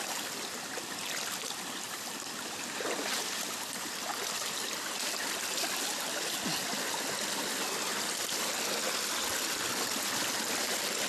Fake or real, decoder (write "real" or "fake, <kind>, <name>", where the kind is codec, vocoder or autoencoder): real